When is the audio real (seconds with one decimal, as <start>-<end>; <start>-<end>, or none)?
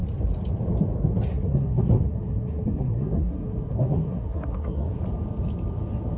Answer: 0.0-1.3; 5.0-6.2